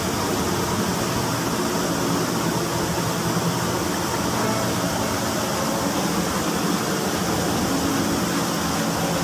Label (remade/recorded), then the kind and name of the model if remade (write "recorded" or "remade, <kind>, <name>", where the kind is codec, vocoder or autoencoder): recorded